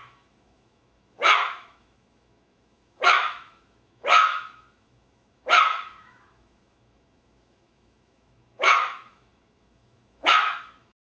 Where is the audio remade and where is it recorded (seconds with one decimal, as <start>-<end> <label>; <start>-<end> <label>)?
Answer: 0.0-11.1 remade

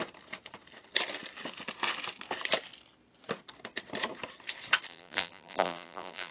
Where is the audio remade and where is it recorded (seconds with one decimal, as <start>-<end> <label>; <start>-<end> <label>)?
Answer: 0.0-4.9 recorded; 4.9-6.3 remade

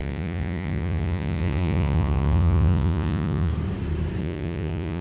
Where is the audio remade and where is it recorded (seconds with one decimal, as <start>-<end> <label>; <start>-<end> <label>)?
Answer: 0.0-3.5 remade; 3.5-4.2 recorded; 4.2-5.0 remade

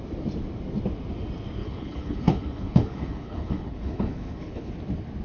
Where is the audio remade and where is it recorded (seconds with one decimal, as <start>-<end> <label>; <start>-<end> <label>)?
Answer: 0.0-1.6 recorded; 1.6-4.7 remade; 4.7-5.2 recorded

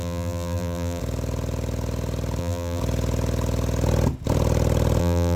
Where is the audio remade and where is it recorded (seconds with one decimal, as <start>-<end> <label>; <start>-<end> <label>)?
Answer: 0.0-1.0 remade; 1.0-2.4 recorded; 2.4-2.8 remade; 2.8-5.0 recorded; 5.0-5.4 remade